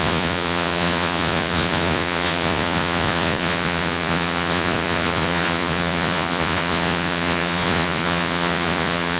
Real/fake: fake